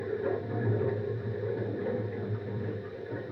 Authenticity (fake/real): real